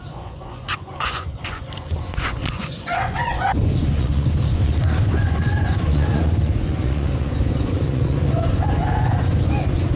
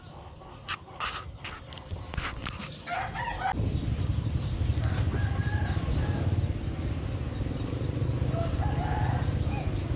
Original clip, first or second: second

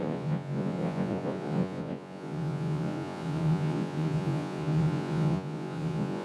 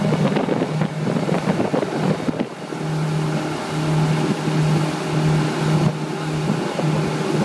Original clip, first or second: second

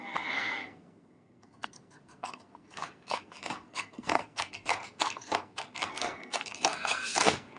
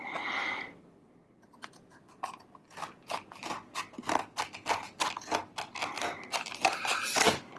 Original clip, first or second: second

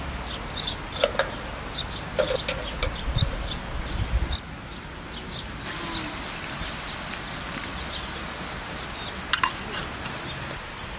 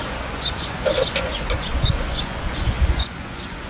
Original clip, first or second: first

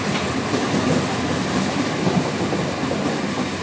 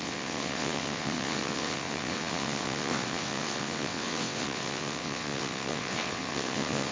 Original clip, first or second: first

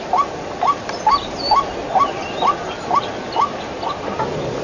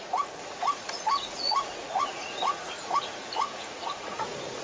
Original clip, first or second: first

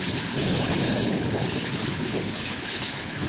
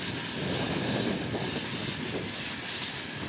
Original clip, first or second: second